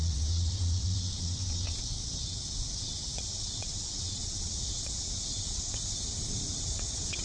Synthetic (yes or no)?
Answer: yes